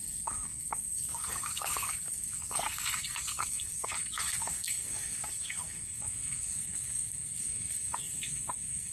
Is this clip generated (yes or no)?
yes